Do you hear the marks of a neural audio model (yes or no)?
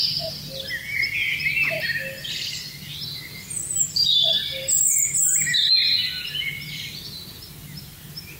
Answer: no